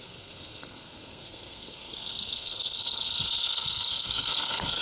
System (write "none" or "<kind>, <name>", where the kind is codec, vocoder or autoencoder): codec, SNAC